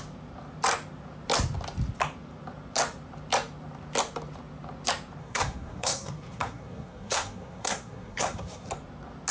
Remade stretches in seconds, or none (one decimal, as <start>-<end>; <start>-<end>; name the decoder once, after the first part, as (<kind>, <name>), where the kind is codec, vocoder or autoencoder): 5.2-8.7 (codec, SNAC)